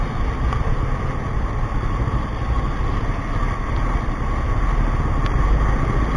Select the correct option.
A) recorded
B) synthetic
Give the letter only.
A